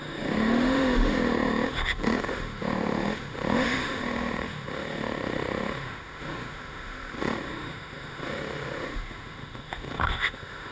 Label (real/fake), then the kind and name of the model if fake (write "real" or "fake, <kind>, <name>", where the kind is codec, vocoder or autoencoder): fake, autoencoder, DAC-VAE